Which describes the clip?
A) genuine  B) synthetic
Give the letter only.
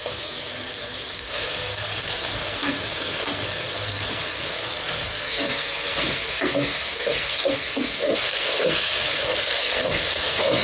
B